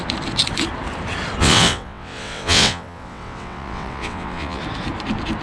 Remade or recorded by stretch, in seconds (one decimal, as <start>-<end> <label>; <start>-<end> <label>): 0.0-1.4 recorded; 1.4-4.6 remade; 4.6-5.4 recorded